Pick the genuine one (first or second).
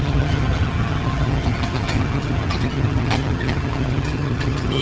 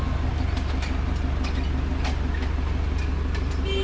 second